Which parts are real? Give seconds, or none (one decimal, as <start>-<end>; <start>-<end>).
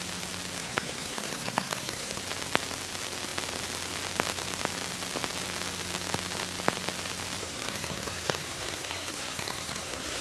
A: 0.0-0.6; 2.2-7.4